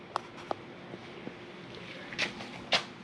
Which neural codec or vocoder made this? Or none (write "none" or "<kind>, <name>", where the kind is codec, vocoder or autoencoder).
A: none